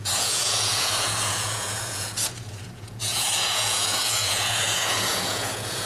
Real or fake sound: fake